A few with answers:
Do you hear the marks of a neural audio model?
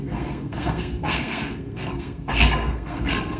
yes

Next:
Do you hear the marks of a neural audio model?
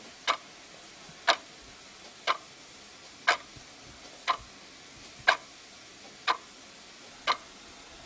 no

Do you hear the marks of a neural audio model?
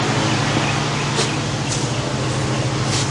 no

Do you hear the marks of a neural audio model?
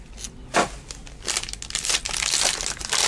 no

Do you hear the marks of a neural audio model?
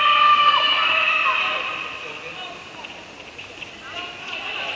no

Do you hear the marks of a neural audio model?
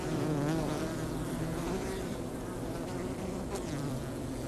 yes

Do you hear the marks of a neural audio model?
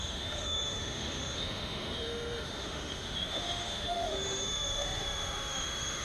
yes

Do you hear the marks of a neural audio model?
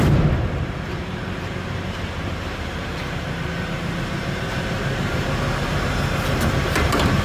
yes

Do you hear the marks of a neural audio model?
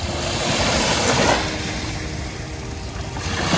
no